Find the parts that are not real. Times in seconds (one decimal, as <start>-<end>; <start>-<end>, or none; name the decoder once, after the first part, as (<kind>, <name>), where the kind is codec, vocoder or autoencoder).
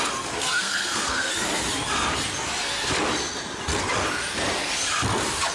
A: 0.4-1.3 (codec, SNAC)